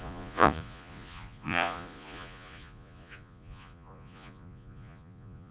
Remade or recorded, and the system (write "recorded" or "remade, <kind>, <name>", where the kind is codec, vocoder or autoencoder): remade, vocoder, Vocos